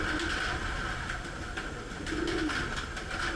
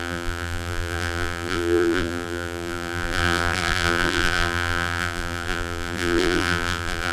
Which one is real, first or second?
first